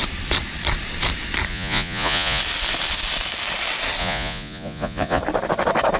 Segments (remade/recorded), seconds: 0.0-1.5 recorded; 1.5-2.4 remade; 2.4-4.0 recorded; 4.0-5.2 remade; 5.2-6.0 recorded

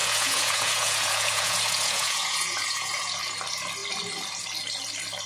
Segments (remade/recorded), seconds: 0.0-3.2 remade; 3.2-5.3 recorded

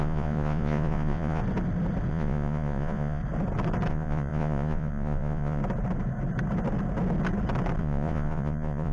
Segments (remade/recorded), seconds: 0.0-1.4 remade; 1.4-2.1 recorded; 2.1-3.2 remade; 3.2-3.9 recorded; 3.9-5.6 remade; 5.6-7.8 recorded; 7.8-8.9 remade

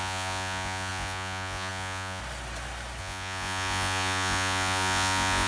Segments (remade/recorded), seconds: 0.0-2.2 remade; 2.2-3.0 recorded; 3.0-5.5 remade